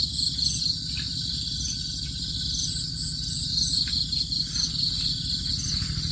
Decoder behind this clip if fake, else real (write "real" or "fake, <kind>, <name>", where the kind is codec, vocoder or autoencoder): real